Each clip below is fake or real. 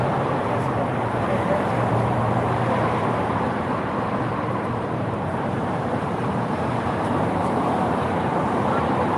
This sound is fake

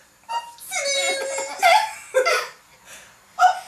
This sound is real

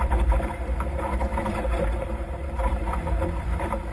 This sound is fake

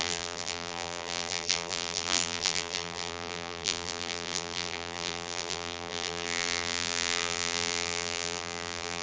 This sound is fake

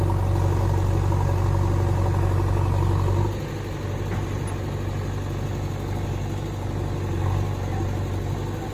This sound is real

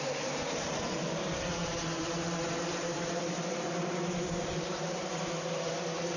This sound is fake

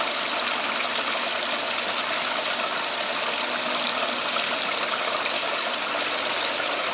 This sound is real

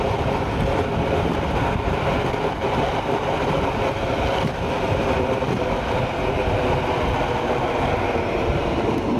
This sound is real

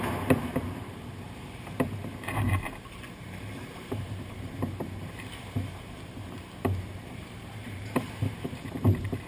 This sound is fake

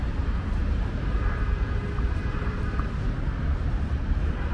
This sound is fake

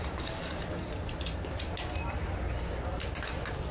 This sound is real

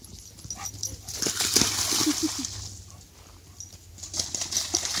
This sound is real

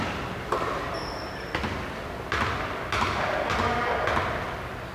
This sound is real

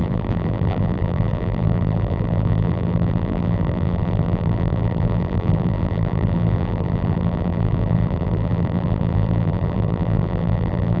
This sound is fake